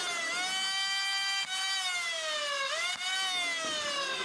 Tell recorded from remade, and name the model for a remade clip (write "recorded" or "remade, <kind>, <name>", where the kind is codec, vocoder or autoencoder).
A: recorded